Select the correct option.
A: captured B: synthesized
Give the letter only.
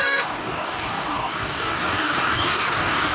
B